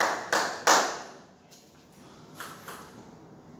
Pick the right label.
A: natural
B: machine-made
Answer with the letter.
A